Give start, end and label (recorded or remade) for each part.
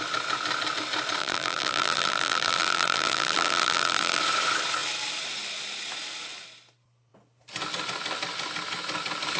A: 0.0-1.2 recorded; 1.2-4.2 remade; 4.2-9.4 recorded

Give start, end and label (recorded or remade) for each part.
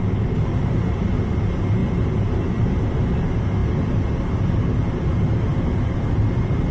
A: 0.0-0.5 recorded; 0.5-1.3 remade; 1.3-1.8 recorded; 1.8-2.9 remade; 2.9-5.5 recorded; 5.5-6.7 remade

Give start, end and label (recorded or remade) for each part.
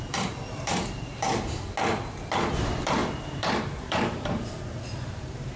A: 0.0-1.3 remade; 1.3-2.4 recorded; 2.4-5.6 remade